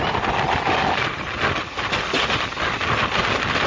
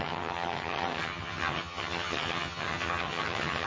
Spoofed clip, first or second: second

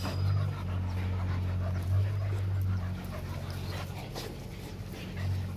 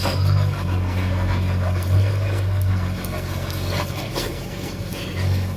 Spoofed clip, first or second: second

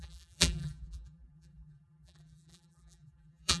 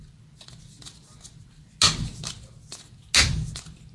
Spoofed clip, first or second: first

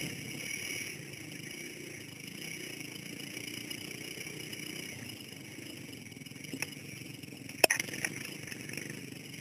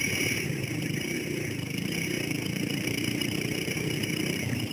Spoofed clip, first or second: second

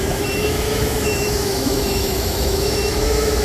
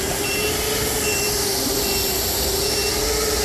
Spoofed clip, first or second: first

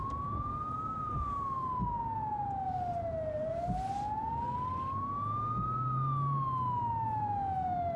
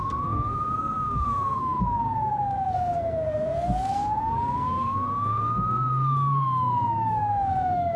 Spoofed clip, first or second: second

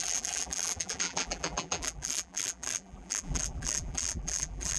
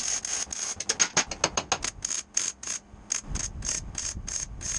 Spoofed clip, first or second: first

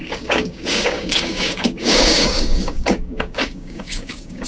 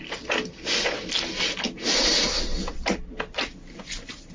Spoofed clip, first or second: first